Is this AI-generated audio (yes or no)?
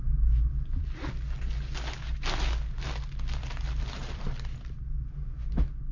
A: no